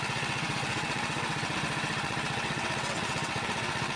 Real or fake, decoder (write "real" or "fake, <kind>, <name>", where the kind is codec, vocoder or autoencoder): fake, vocoder, WaveNeXt